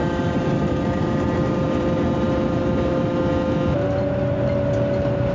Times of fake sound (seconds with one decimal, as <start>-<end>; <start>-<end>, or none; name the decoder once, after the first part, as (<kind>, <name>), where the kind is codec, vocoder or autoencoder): 0.0-3.2 (vocoder, BigVGAN v2)